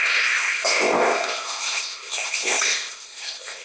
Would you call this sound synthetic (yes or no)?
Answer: yes